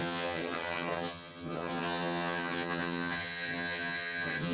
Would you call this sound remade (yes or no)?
yes